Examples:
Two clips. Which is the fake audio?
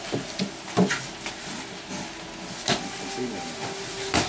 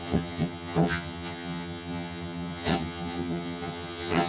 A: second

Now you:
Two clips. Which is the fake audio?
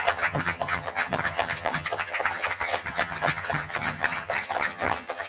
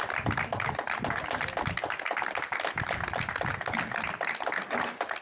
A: first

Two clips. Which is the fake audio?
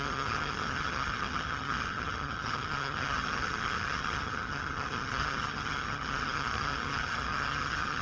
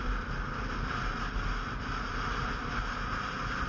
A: first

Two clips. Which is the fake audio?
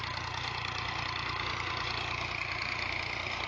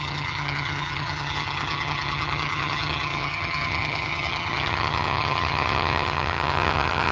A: second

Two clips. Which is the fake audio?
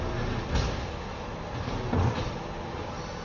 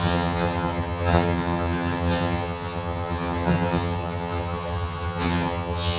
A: second